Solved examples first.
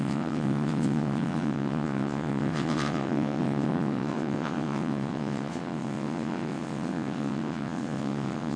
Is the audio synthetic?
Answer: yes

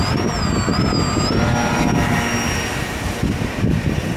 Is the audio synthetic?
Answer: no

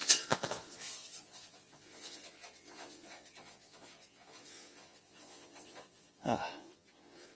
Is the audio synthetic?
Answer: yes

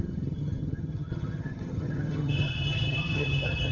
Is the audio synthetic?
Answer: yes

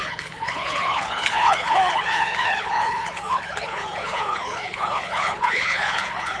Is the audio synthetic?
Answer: yes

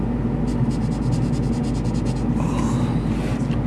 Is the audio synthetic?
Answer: no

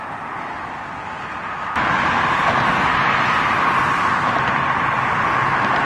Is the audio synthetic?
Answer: no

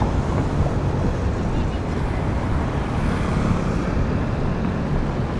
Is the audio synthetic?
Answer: no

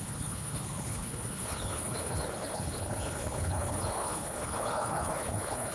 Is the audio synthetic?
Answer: yes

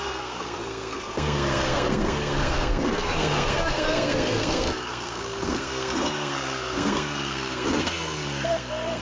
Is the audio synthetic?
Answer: yes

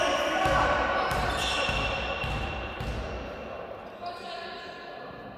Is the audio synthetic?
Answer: no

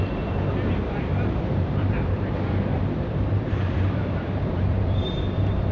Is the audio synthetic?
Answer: yes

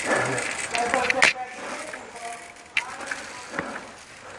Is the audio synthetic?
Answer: no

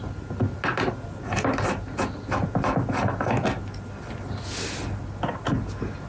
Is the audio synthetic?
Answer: no